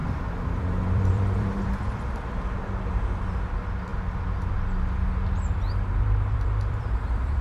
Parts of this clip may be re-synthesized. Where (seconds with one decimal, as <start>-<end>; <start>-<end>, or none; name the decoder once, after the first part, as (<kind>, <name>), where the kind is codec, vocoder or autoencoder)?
0.0-3.9 (vocoder, BigVGAN v2); 6.0-7.4